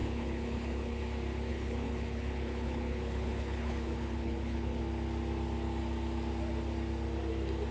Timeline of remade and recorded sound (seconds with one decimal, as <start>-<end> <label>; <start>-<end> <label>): 0.0-1.0 remade; 1.0-1.5 recorded; 1.5-4.8 remade; 4.8-7.7 recorded